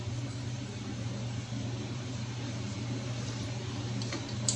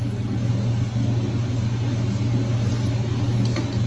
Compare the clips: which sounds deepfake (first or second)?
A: first